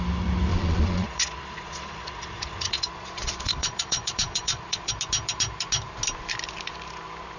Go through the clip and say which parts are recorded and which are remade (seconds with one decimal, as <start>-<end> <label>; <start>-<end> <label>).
0.0-0.5 recorded; 0.5-4.9 remade; 4.9-7.4 recorded